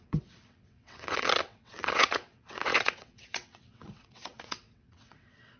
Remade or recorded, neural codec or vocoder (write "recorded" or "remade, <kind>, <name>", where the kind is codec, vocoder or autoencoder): remade, vocoder, WaveNeXt